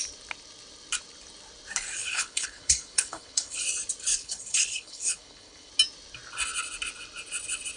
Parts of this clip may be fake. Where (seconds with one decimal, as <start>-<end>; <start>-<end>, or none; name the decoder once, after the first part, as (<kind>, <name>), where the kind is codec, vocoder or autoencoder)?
2.0-3.6 (codec, HILCodec); 4.1-5.7